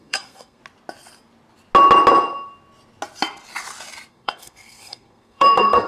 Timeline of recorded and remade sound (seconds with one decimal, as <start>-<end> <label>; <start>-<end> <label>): 0.0-0.6 remade; 0.6-4.1 recorded; 4.1-5.9 remade